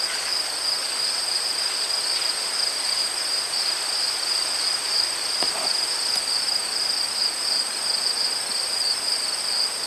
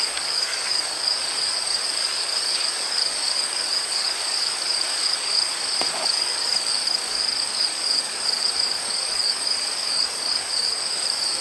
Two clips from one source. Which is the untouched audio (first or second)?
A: first